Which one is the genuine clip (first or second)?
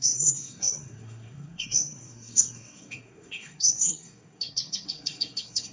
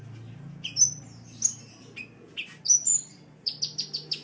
second